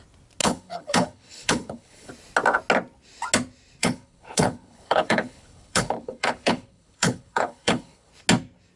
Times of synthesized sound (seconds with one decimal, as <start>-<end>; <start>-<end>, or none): 0.4-2.1; 3.8-8.1